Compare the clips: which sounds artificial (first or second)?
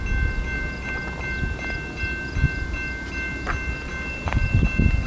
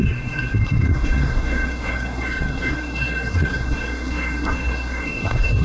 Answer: second